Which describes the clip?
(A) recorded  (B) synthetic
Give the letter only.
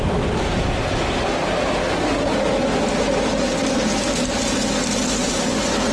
A